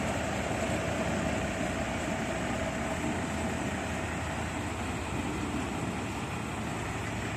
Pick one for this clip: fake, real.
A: real